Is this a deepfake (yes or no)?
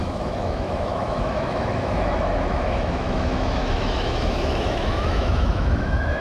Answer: yes